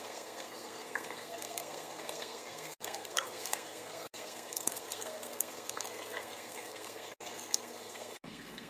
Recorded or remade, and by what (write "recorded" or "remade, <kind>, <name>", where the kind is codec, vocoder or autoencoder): remade, codec, SNAC